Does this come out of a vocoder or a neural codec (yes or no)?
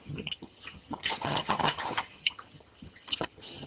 yes